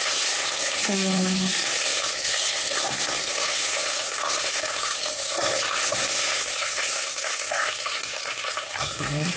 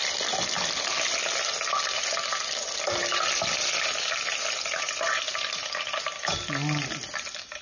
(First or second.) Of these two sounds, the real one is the second